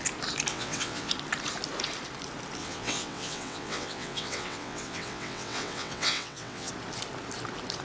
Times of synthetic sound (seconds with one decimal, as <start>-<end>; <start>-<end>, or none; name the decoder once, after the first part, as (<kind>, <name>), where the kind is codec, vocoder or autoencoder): 0.5-1.1 (vocoder, WaveNeXt); 2.6-6.7